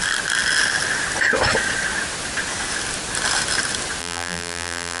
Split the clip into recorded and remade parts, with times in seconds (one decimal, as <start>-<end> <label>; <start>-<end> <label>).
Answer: 0.0-4.0 recorded; 4.0-5.0 remade